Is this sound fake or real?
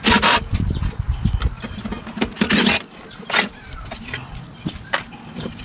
real